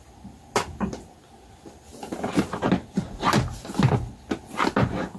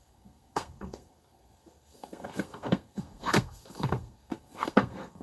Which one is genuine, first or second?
first